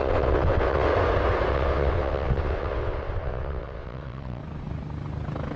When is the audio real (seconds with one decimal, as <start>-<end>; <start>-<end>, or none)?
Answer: 0.9-1.5; 4.4-5.6